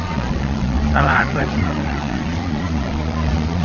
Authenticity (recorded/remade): remade